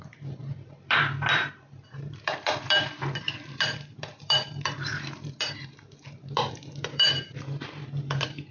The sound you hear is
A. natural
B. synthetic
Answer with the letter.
B